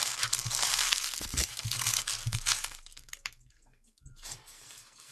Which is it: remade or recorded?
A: remade